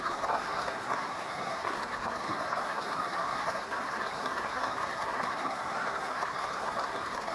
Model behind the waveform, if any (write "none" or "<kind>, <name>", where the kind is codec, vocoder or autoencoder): codec, SNAC